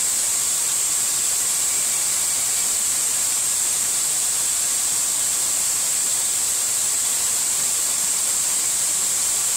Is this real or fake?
fake